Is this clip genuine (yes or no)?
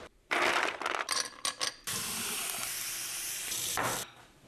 no